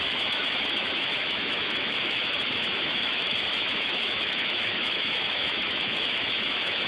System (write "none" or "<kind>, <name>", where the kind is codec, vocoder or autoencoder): autoencoder, DAC-VAE